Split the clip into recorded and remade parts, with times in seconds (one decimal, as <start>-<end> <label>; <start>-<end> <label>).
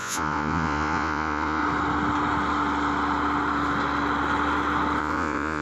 0.0-1.6 remade; 1.6-5.0 recorded; 5.0-5.6 remade